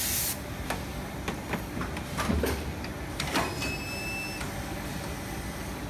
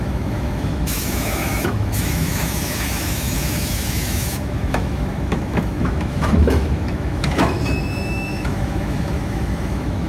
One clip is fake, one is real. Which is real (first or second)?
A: first